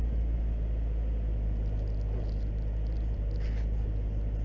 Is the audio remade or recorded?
recorded